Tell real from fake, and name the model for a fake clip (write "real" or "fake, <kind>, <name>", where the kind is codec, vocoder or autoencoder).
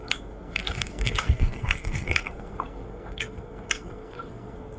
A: fake, codec, SNAC